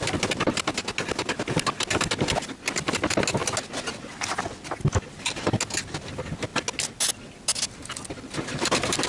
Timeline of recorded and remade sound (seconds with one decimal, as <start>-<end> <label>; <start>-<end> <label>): 0.0-9.1 recorded